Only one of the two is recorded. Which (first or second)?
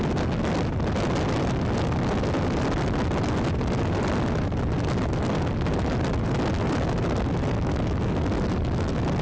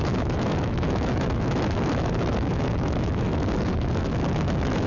first